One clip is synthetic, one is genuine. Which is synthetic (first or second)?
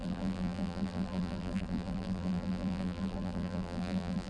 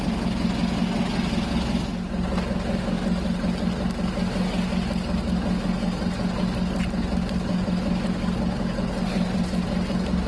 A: first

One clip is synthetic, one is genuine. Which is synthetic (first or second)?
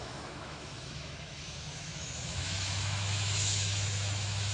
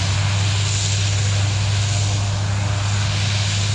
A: first